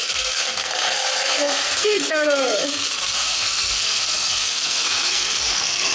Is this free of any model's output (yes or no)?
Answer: no